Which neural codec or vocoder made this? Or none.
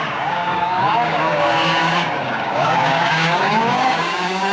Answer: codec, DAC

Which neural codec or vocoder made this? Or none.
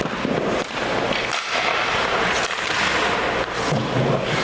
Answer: none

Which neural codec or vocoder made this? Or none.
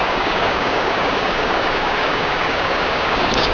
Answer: codec, DAC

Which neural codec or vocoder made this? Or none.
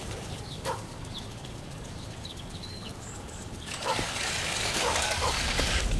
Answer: codec, DAC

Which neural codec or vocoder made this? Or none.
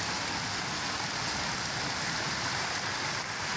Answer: none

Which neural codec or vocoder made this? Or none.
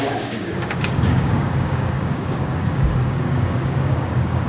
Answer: codec, DAC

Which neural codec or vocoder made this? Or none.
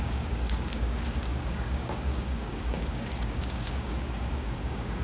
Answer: codec, DAC